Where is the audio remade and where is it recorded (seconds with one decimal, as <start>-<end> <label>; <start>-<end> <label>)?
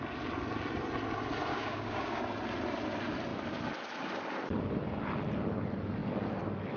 0.0-1.5 recorded; 1.5-2.2 remade; 2.2-6.8 recorded